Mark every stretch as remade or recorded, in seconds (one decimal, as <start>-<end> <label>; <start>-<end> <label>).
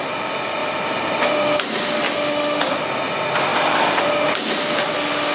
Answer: 0.0-0.6 recorded; 0.6-1.1 remade; 1.1-3.5 recorded; 3.5-4.6 remade; 4.6-5.3 recorded